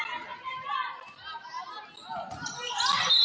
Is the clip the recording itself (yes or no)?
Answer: yes